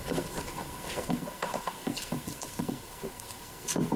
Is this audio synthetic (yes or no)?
yes